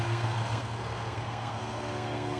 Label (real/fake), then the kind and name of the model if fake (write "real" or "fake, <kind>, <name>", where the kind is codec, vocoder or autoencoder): fake, codec, SNAC